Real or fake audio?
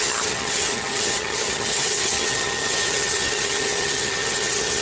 fake